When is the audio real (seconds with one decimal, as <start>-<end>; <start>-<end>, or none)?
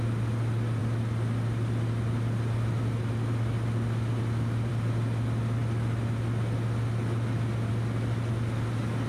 0.0-9.1